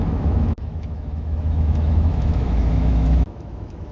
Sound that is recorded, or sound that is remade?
remade